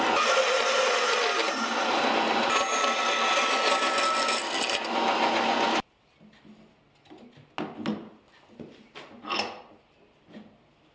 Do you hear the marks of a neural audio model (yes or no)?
no